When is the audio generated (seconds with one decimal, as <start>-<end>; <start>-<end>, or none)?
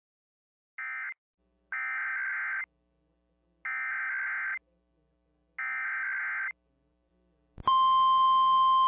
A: none